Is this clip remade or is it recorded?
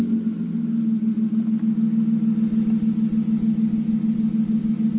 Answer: recorded